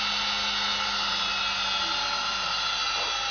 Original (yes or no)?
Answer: yes